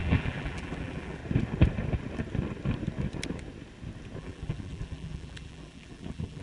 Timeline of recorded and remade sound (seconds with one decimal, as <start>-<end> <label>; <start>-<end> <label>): 0.0-1.2 remade; 1.2-4.2 recorded; 4.2-6.4 remade